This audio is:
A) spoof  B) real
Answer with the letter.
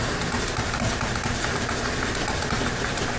B